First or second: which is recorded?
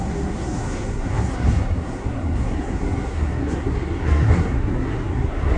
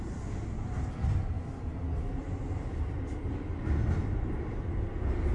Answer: second